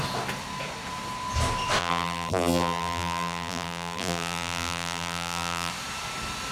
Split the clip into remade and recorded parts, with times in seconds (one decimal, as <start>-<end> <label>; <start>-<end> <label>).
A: 0.0-1.8 recorded; 1.8-5.7 remade; 5.7-6.5 recorded